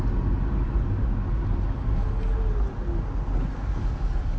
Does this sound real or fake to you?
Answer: real